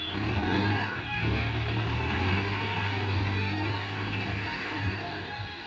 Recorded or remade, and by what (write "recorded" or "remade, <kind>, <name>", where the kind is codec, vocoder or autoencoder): remade, codec, DAC